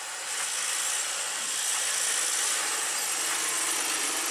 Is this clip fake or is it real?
real